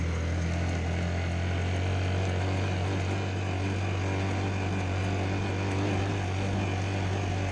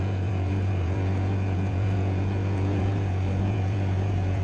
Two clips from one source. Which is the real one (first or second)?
first